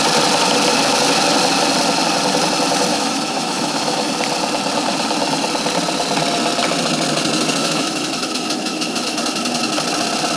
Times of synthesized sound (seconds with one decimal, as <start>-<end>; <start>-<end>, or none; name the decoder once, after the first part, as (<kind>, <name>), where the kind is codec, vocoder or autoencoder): 2.9-4.1 (autoencoder, DAC-VAE); 7.6-9.2